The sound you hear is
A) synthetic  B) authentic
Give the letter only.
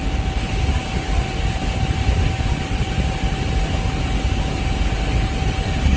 B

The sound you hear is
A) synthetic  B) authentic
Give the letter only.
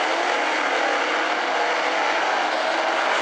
B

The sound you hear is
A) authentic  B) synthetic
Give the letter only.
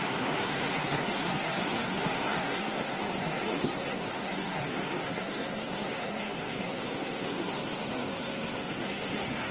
B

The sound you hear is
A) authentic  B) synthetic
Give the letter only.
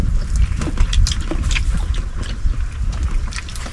A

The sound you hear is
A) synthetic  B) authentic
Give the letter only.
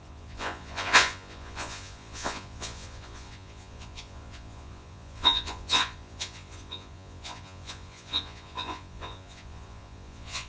A